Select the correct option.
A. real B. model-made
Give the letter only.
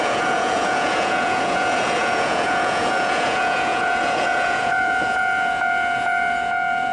B